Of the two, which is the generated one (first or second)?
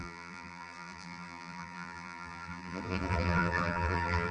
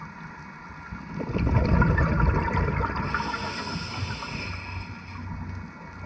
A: first